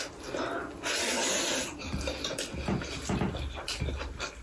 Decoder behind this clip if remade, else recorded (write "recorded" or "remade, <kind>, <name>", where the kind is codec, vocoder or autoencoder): recorded